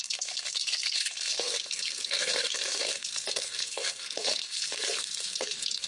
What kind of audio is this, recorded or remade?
remade